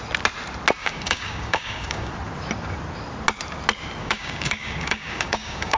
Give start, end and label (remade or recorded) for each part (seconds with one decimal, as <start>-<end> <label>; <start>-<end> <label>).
0.0-0.8 recorded; 0.8-2.1 remade; 2.1-4.0 recorded; 4.0-5.8 remade